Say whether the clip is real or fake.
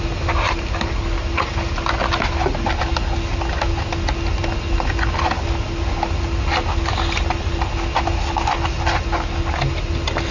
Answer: real